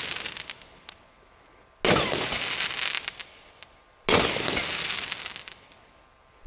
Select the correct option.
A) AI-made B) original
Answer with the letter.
B